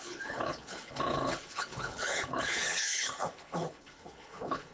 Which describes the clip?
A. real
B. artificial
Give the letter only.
B